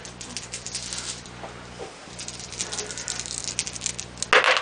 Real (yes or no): yes